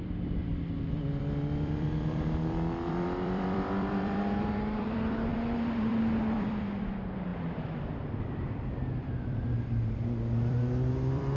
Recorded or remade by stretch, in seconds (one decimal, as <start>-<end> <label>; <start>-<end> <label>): 0.0-0.5 remade; 0.5-1.2 recorded; 1.2-2.4 remade; 2.4-2.9 recorded; 2.9-11.4 remade